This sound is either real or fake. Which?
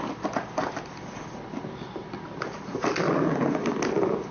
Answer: fake